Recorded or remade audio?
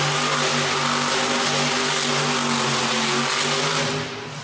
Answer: recorded